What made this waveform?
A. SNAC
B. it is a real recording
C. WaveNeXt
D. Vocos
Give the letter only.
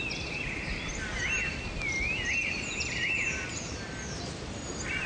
B